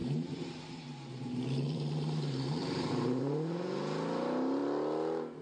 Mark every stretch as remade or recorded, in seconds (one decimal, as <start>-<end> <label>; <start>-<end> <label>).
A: 0.0-3.2 remade; 3.2-5.4 recorded